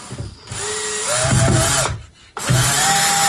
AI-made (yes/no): no